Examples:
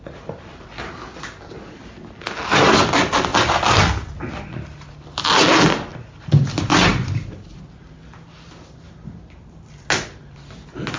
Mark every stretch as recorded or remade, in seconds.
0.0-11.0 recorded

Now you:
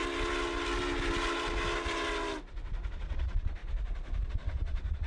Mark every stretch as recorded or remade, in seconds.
0.0-2.9 recorded; 2.9-3.6 remade; 3.6-4.3 recorded; 4.3-5.1 remade